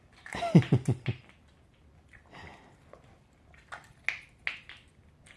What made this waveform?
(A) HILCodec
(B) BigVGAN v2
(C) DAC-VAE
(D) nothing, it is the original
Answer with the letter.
D